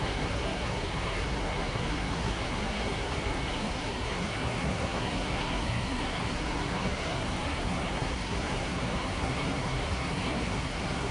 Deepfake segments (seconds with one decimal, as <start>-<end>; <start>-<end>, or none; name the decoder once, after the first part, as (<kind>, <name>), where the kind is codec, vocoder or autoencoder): 0.0-11.1 (codec, SNAC)